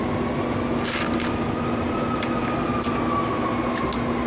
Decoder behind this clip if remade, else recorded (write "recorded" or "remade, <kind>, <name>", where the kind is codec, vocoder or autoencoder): recorded